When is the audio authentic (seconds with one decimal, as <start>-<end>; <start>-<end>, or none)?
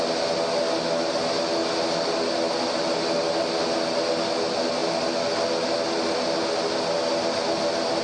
0.0-8.0